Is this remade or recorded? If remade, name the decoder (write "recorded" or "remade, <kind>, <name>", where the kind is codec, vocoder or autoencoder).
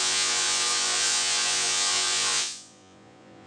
remade, vocoder, Vocos